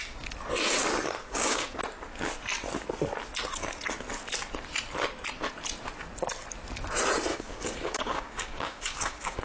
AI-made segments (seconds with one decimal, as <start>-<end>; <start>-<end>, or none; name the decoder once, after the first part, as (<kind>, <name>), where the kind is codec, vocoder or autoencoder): 1.2-1.8 (codec, DAC); 7.3-9.4